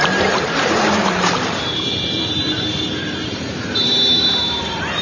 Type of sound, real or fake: fake